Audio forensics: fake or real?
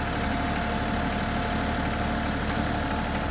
real